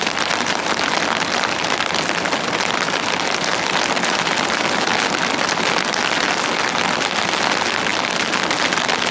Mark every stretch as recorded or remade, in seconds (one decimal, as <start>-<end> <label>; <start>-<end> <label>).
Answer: 0.0-9.1 recorded